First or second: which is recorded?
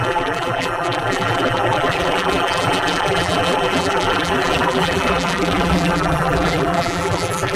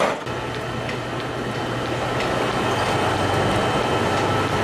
second